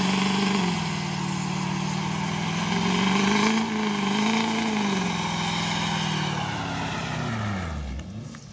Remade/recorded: recorded